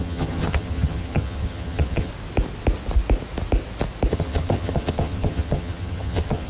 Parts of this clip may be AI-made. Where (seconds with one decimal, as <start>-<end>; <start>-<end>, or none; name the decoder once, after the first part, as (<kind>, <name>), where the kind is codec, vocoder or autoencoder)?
0.0-2.1 (vocoder, HiFi-GAN); 4.1-6.5